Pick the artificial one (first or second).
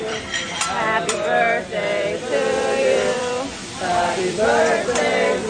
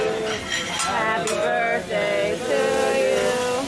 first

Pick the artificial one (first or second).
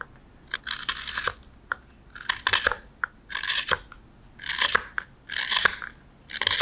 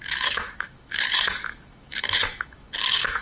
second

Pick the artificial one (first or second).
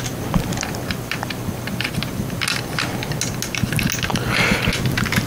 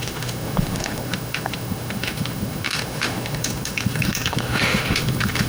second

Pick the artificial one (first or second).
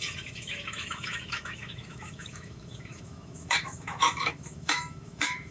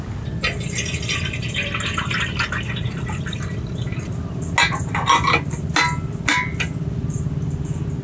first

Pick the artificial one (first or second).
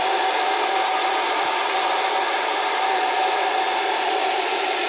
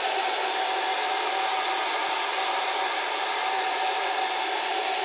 first